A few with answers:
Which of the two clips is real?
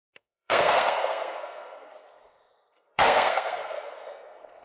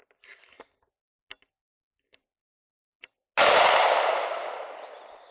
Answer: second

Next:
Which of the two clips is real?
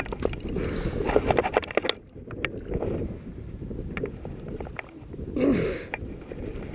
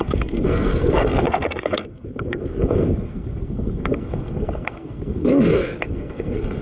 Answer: first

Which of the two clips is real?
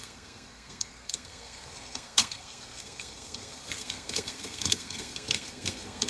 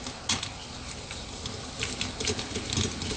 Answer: second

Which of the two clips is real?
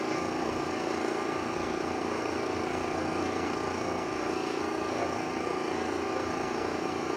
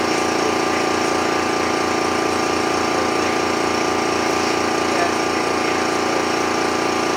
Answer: second